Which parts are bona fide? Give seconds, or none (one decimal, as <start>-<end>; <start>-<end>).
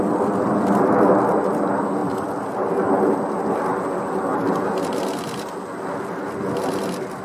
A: 0.0-7.2